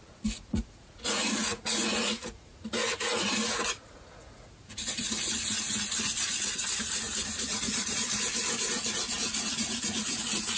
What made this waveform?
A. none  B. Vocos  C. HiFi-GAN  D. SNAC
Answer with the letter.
B